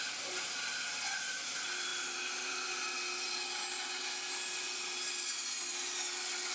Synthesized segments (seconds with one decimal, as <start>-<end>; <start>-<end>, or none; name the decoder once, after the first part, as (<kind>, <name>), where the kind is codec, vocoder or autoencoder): none